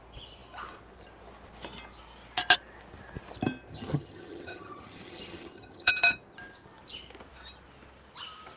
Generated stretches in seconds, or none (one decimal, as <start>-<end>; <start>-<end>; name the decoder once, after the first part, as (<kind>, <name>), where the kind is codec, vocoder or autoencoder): 3.7-5.9 (vocoder, HiFi-GAN)